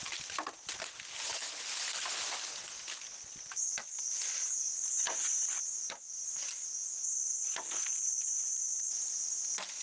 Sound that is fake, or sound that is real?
real